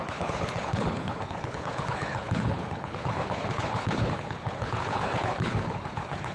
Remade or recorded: remade